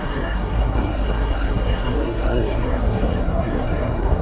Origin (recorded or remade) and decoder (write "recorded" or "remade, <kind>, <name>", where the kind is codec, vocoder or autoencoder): remade, codec, SNAC